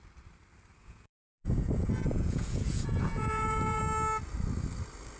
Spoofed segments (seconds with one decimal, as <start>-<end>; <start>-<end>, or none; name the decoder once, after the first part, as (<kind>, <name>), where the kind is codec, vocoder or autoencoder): 0.8-3.8 (vocoder, Vocos)